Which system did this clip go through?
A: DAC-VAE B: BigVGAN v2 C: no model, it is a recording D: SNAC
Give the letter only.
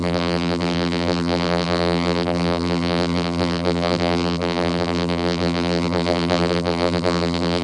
B